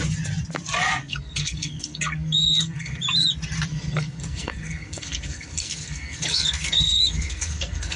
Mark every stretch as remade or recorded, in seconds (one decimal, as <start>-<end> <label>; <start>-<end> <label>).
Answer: 0.0-1.0 recorded; 1.0-3.0 remade; 3.0-3.7 recorded; 3.7-8.0 remade